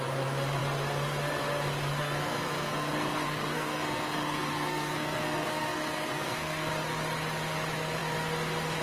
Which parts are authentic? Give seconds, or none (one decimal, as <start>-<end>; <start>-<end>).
0.0-2.0; 6.7-8.8